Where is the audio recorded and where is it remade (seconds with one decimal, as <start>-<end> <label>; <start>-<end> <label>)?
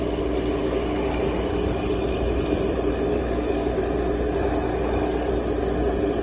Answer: 0.0-0.6 recorded; 0.6-1.9 remade; 1.9-3.2 recorded; 3.2-3.8 remade; 3.8-4.7 recorded; 4.7-5.3 remade; 5.3-6.2 recorded